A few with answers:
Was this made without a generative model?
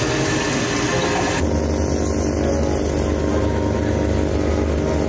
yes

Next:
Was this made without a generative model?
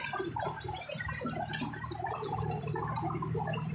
no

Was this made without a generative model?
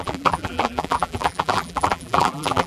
no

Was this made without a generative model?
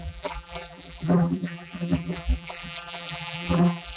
no